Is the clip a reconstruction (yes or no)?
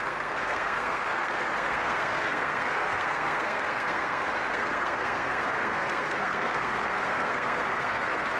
yes